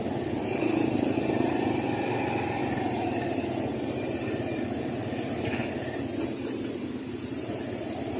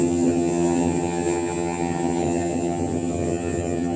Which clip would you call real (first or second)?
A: first